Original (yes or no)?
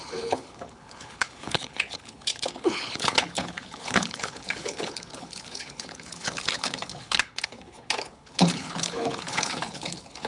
no